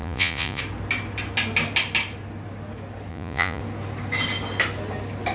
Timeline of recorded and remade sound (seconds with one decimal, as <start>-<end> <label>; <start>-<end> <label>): 0.0-0.6 remade; 0.6-3.1 recorded; 3.1-3.6 remade; 3.6-5.3 recorded